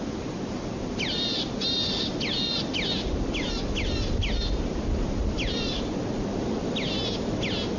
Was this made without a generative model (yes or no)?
yes